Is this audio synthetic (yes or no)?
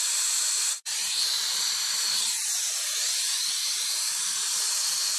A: yes